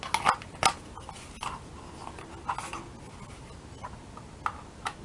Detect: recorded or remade recorded